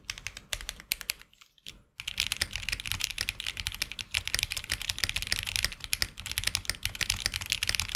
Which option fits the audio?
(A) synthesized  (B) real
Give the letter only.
B